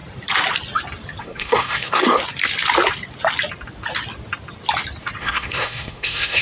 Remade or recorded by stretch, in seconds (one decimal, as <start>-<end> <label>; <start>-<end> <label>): 0.0-1.2 recorded; 1.2-2.2 remade; 2.2-5.2 recorded; 5.2-6.4 remade